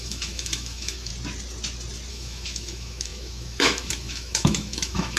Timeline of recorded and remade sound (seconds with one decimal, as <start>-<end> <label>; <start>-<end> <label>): 0.0-1.1 remade; 1.1-2.1 recorded; 2.1-5.2 remade